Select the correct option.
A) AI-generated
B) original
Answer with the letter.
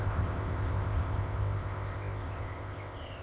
A